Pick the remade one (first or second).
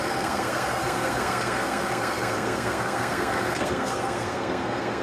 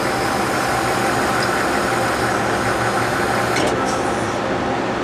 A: first